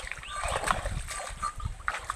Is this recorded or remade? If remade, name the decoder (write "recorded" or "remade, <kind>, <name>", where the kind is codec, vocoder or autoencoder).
recorded